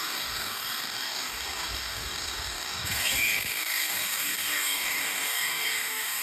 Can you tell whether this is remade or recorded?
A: remade